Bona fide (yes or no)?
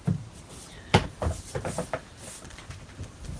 yes